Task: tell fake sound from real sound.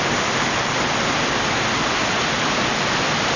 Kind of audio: real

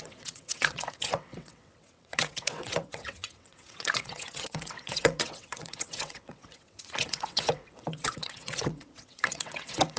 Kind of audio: fake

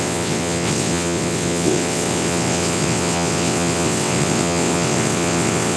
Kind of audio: fake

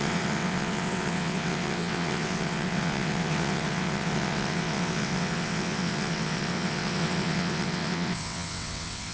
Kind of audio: fake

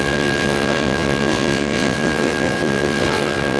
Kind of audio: fake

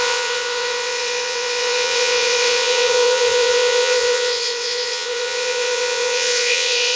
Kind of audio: fake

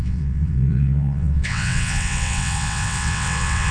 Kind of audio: fake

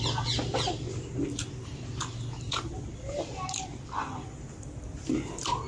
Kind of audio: real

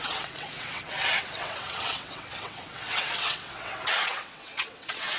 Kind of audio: fake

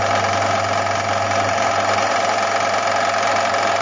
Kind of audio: real